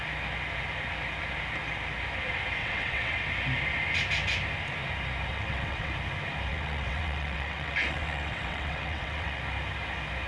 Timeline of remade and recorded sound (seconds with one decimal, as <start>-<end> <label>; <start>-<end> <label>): 0.0-2.6 recorded; 2.6-3.1 remade; 3.1-5.3 recorded; 5.3-5.9 remade; 5.9-6.5 recorded; 6.5-9.4 remade; 9.4-10.3 recorded